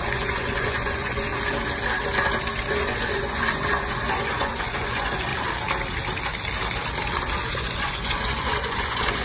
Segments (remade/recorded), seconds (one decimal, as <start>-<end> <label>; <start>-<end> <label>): 0.0-1.3 remade; 1.3-2.7 recorded; 2.7-5.3 remade; 5.3-7.5 recorded; 7.5-9.2 remade